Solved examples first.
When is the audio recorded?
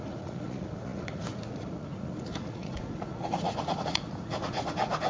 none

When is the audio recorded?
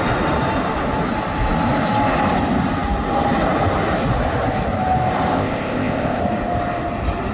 0.0-5.3; 6.2-7.3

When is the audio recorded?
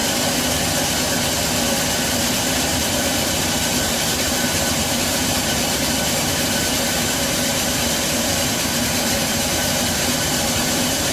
0.0-2.1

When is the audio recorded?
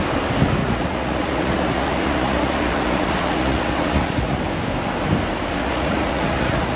0.0-0.6; 4.4-5.6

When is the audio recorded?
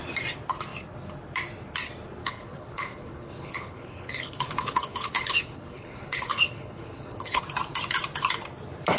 0.0-2.2; 7.4-9.0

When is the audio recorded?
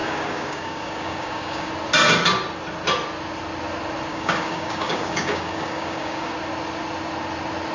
1.7-4.1; 6.3-7.7